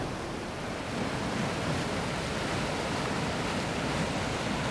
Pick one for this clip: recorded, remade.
recorded